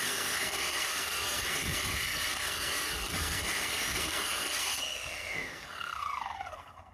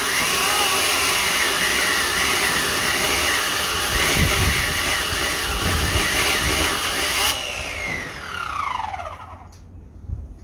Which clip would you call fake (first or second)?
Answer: first